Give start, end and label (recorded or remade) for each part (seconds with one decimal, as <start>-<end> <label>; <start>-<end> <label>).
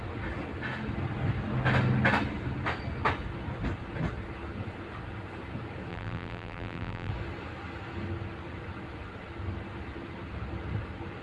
0.0-5.9 recorded; 5.9-7.1 remade; 7.1-11.2 recorded